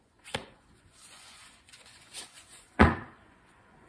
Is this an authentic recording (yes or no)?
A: no